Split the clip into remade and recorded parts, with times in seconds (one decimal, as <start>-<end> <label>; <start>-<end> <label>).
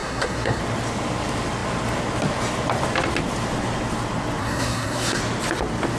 0.0-0.6 remade; 0.6-4.4 recorded; 4.4-5.2 remade; 5.2-6.0 recorded